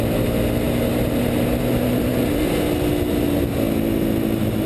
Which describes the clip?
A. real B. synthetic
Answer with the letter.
A